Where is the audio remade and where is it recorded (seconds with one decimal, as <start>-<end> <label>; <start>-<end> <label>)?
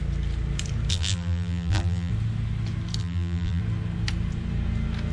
0.0-0.9 recorded; 0.9-2.1 remade; 2.1-3.0 recorded; 3.0-3.6 remade; 3.6-5.1 recorded